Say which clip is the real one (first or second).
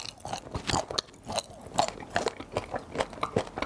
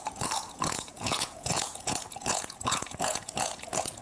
first